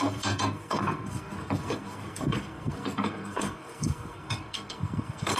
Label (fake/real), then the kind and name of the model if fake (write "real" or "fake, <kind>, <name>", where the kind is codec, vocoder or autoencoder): fake, codec, SNAC